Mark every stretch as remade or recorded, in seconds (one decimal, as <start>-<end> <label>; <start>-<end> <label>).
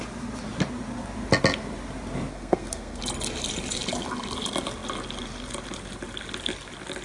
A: 0.0-2.3 recorded; 2.3-3.0 remade; 3.0-7.0 recorded